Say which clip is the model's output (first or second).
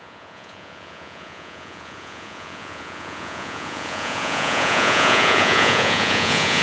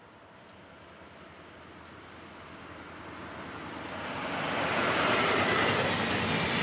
first